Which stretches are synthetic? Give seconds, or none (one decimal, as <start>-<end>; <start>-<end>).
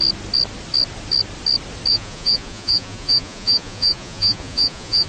1.9-5.1